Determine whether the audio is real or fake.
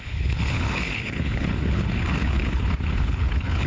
fake